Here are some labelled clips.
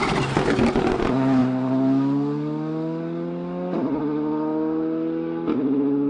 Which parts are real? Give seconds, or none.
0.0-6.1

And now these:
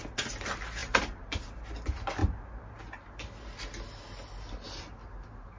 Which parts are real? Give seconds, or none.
0.0-0.8; 1.5-5.6

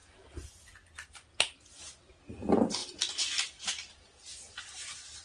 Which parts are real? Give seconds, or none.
0.0-2.8; 3.6-5.2